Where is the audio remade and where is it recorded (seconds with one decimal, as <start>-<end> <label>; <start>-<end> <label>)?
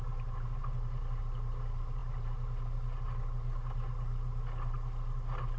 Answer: 0.0-5.6 recorded